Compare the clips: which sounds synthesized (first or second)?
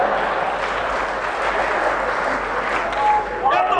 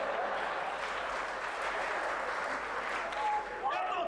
second